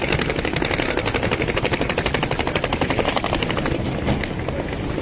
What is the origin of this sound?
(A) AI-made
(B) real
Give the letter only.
B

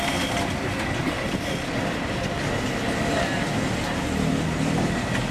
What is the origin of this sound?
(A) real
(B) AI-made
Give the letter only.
A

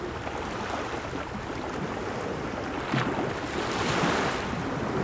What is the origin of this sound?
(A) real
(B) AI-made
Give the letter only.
A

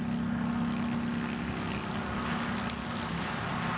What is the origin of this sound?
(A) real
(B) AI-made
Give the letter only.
A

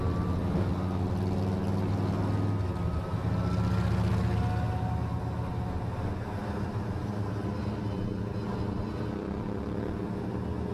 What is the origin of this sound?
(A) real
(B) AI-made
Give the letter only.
A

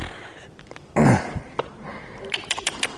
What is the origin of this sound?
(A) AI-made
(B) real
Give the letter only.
A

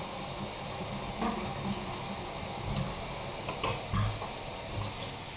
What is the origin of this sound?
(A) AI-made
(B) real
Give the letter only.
B